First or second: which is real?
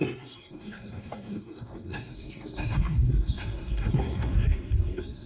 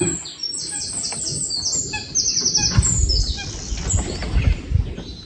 second